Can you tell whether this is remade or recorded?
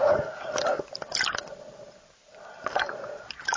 recorded